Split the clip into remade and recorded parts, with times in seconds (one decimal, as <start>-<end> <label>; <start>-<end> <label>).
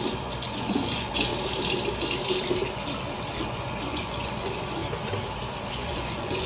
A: 0.0-1.3 remade; 1.3-3.5 recorded; 3.5-4.8 remade; 4.8-5.7 recorded; 5.7-6.5 remade